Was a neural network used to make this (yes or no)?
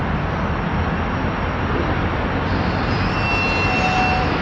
no